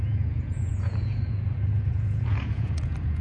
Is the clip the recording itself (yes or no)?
no